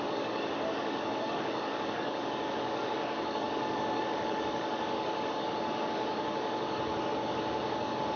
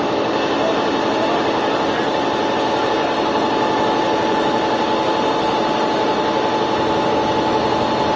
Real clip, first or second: second